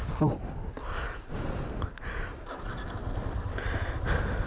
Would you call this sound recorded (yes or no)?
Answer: yes